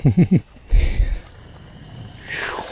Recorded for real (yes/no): yes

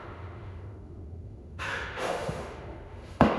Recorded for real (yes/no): no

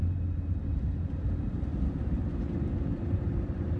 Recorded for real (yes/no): no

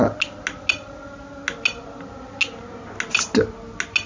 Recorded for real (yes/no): yes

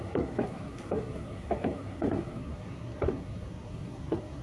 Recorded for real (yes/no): no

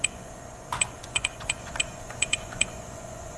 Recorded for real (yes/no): no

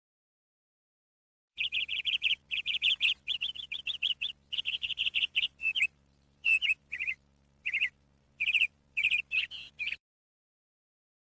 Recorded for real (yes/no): no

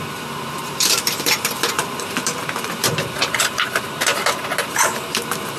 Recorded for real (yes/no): no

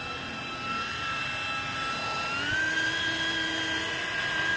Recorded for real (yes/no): yes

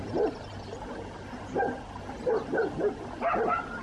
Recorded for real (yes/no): yes